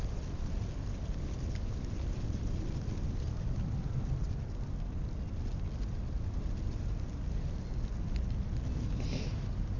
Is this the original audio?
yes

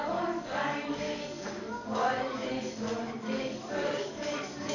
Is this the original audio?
no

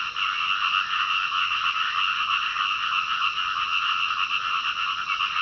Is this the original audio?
yes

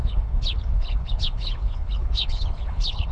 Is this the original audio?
no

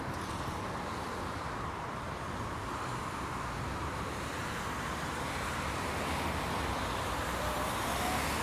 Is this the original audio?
yes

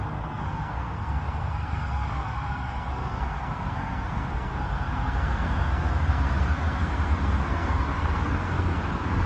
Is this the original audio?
no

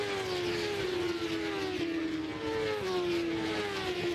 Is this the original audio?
yes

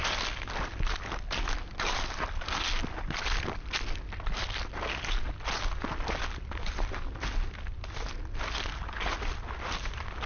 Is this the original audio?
yes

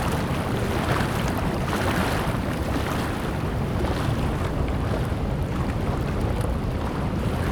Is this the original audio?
yes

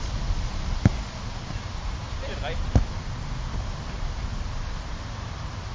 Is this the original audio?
yes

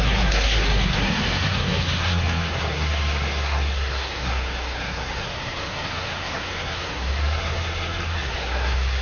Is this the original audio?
no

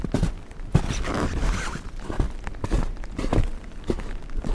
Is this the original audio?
yes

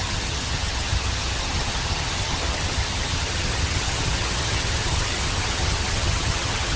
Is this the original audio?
no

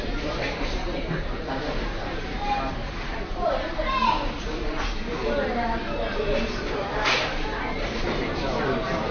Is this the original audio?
no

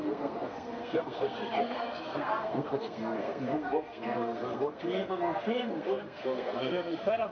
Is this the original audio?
no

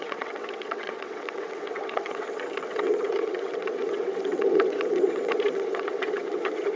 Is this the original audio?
no